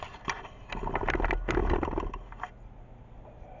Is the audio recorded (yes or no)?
yes